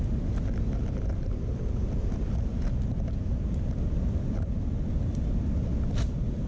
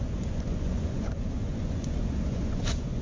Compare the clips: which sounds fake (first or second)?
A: second